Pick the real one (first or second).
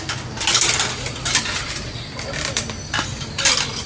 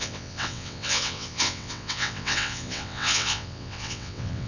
first